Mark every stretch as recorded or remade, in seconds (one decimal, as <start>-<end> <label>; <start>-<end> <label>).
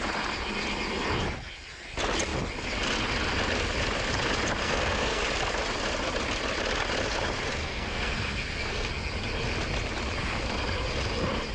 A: 0.0-4.6 recorded; 4.6-5.2 remade; 5.2-7.6 recorded; 7.6-8.9 remade; 8.9-11.5 recorded